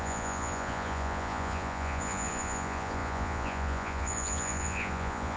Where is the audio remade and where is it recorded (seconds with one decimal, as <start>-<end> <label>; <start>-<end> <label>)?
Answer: 0.0-5.4 remade